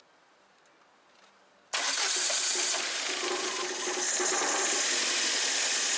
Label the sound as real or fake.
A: real